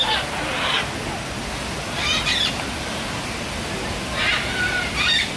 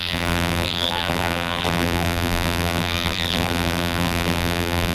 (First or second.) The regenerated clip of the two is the second